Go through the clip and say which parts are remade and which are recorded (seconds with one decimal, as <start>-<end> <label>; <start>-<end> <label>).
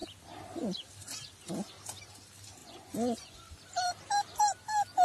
0.0-2.6 recorded; 2.6-3.5 remade; 3.5-5.0 recorded